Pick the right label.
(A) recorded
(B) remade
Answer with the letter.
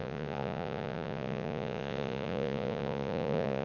B